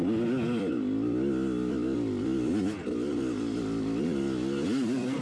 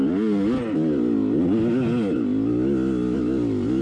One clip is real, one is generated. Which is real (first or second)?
second